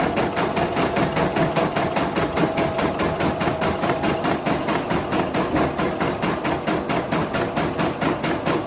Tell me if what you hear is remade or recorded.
recorded